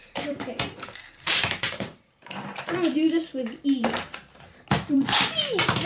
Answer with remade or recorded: remade